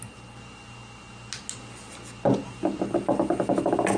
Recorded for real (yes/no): yes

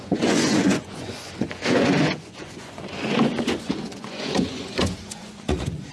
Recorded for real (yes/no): no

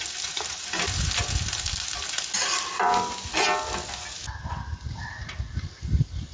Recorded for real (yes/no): yes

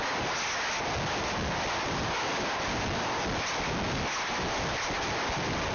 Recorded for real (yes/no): yes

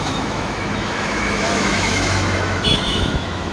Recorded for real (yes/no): no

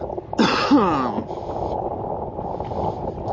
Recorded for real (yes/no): yes